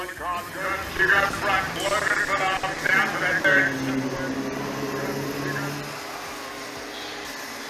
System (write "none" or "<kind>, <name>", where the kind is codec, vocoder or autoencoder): none